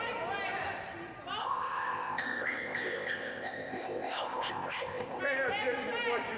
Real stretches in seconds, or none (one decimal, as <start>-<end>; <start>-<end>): 0.0-1.4; 5.2-6.4